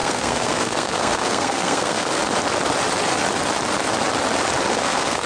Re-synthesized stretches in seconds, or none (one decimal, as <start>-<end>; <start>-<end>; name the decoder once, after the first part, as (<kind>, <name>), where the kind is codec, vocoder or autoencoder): 0.0-2.2 (codec, SNAC); 4.7-5.3